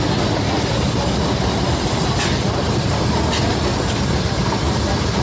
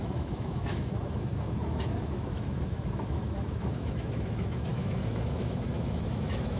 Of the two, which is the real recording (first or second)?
first